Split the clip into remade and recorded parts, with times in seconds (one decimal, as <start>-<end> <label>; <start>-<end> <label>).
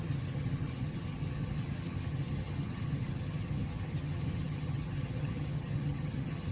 0.0-6.5 remade